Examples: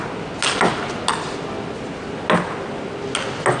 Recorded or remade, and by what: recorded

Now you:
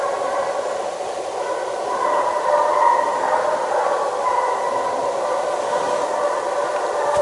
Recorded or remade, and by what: recorded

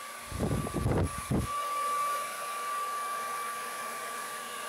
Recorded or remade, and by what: remade, codec, DAC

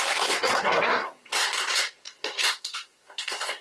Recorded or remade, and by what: remade, codec, SNAC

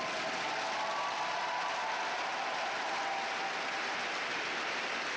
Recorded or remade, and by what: recorded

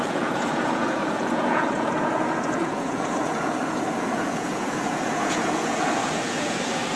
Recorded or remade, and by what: remade, vocoder, Vocos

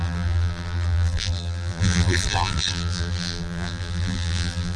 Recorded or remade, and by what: remade, vocoder, BigVGAN v2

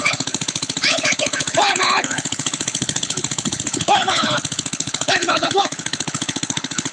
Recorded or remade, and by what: remade, codec, HILCodec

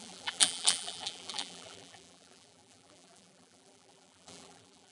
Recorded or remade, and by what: remade, vocoder, BigVGAN v2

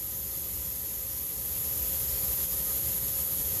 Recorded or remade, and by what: recorded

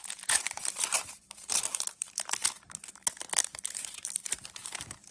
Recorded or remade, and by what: remade, vocoder, BigVGAN v2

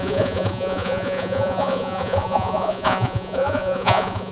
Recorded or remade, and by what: remade, vocoder, Vocos